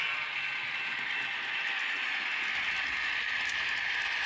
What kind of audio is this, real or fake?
real